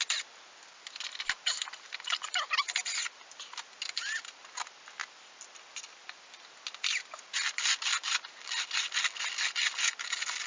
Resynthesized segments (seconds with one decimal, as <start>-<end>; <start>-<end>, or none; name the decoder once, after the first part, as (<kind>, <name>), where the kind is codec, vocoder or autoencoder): none